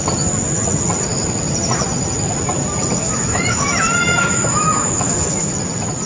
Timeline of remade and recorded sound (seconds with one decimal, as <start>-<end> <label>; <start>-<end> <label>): 0.0-3.0 recorded; 3.0-5.5 remade; 5.5-6.1 recorded